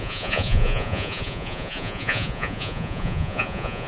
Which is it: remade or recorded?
remade